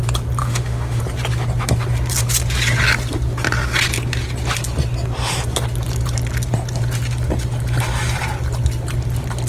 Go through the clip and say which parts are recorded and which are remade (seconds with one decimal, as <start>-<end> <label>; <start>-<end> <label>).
0.0-0.4 recorded; 0.4-1.0 remade; 1.0-9.5 recorded